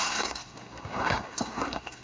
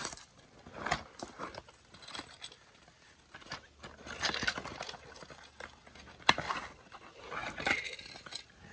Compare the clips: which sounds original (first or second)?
second